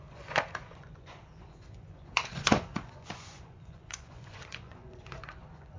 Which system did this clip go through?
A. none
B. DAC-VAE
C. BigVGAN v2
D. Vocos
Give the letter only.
D